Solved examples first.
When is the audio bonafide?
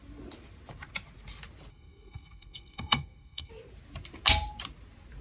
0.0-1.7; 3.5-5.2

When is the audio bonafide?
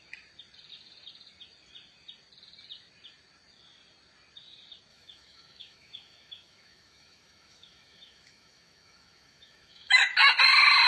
0.0-4.9; 10.0-10.9